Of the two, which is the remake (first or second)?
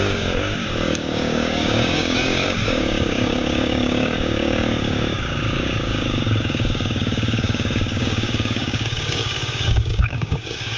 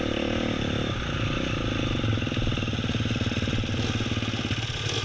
first